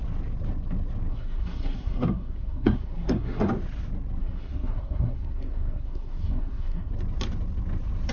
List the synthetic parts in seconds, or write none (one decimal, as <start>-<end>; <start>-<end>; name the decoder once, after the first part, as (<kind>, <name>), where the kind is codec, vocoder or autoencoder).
1.1-3.5 (codec, SNAC); 4.2-6.9